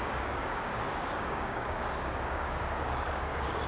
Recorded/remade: remade